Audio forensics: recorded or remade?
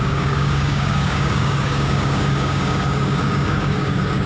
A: remade